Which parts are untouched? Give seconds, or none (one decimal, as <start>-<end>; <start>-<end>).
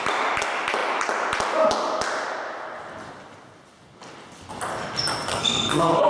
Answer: 0.0-5.3